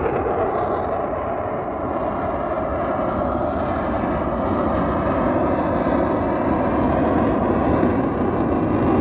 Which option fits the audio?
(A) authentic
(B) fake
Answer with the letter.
A